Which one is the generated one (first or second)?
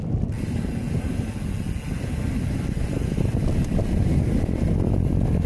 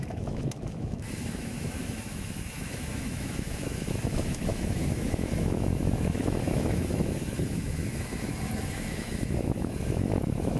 second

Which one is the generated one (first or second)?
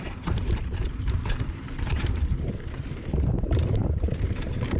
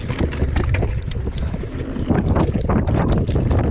first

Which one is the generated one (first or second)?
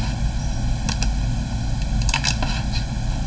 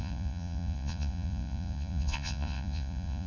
second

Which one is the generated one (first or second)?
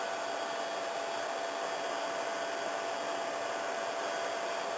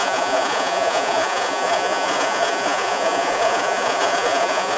second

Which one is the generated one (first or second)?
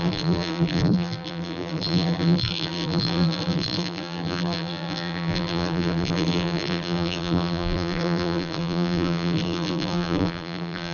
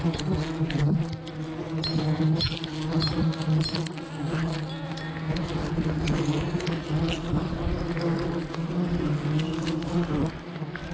first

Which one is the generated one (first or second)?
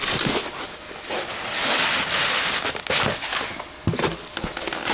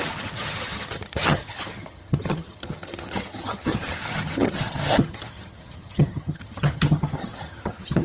second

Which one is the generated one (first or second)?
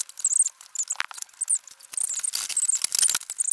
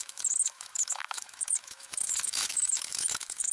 second